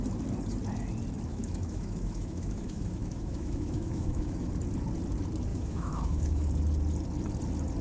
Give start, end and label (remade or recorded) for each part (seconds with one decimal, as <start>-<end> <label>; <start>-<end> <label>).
0.0-1.3 recorded; 1.3-4.5 remade; 4.5-5.5 recorded; 5.5-6.5 remade; 6.5-7.8 recorded